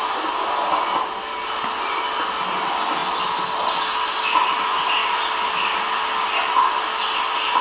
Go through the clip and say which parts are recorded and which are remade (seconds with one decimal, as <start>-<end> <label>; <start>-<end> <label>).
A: 0.0-7.6 recorded